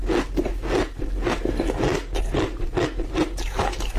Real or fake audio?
real